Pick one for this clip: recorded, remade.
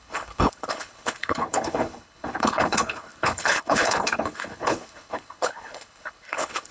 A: remade